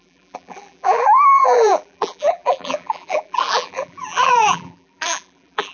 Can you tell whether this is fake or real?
fake